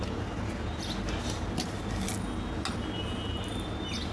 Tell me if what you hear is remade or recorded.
recorded